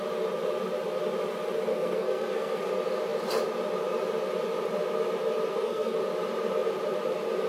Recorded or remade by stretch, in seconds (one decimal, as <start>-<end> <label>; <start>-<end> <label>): 0.0-1.7 recorded; 1.7-2.7 remade; 2.7-5.5 recorded; 5.5-6.0 remade; 6.0-7.5 recorded